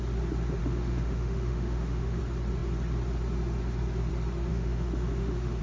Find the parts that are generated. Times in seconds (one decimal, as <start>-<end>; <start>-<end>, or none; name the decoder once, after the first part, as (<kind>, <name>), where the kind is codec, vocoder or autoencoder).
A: 0.6-2.2 (autoencoder, DAC-VAE); 4.5-5.6